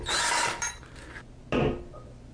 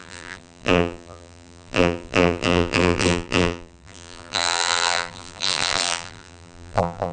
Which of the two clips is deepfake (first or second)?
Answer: second